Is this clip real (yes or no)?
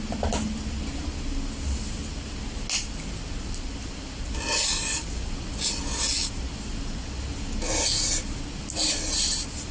yes